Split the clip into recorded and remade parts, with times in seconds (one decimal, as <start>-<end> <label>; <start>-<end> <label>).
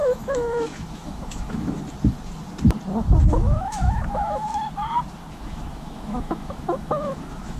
0.0-1.8 remade; 1.8-3.3 recorded; 3.3-4.5 remade; 4.5-5.3 recorded; 5.3-7.6 remade